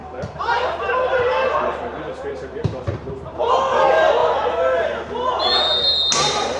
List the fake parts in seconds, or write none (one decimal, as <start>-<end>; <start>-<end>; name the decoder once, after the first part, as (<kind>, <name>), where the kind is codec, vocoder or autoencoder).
0.0-3.1 (vocoder, BigVGAN v2)